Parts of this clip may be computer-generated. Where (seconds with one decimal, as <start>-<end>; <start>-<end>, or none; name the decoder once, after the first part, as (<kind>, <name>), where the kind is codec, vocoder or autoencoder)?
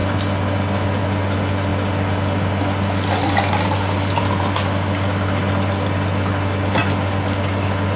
none